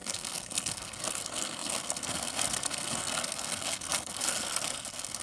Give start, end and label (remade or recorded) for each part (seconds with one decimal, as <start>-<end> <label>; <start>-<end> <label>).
0.0-5.2 remade